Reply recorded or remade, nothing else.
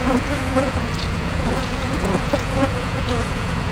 remade